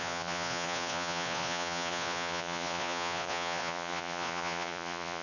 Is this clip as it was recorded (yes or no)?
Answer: no